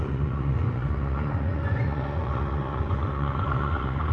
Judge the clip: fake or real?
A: fake